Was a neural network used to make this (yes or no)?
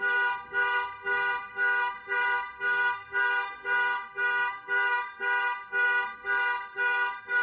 yes